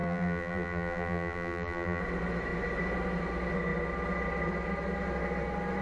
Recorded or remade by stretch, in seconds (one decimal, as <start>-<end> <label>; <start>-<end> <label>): 0.0-2.0 remade; 2.0-5.8 recorded